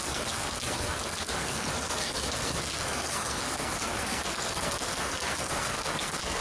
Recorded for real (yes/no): no